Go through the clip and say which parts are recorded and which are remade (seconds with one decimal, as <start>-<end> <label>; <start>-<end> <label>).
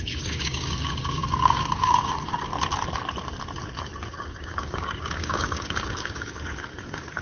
0.0-2.5 remade; 2.5-4.1 recorded; 4.1-7.2 remade